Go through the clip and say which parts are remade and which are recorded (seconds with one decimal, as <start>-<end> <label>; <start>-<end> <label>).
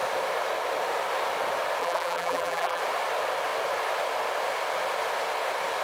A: 0.0-1.8 recorded; 1.8-2.8 remade; 2.8-5.8 recorded